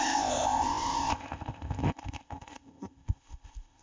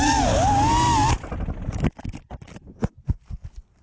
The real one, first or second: second